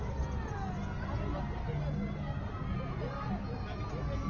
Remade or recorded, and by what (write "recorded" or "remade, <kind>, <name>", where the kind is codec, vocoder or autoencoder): recorded